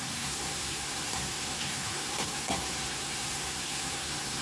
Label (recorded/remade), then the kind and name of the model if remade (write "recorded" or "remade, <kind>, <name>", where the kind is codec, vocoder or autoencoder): remade, codec, SNAC